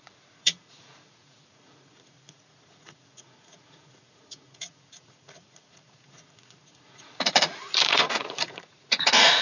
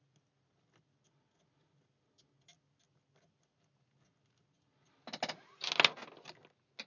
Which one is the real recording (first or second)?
second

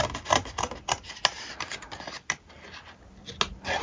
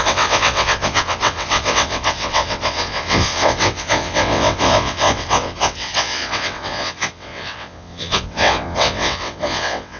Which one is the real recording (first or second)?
first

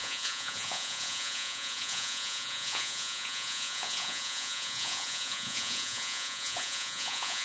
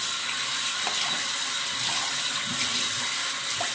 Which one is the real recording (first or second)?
second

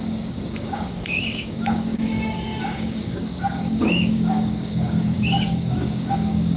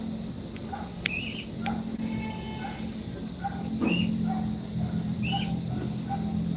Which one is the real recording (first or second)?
second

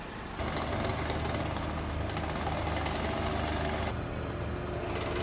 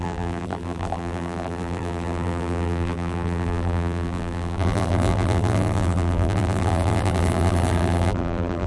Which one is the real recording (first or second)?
first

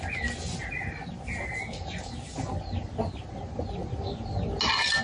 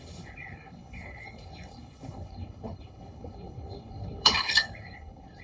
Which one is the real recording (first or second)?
first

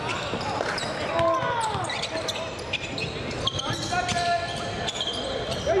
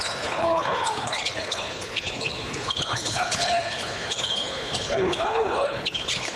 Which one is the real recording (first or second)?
first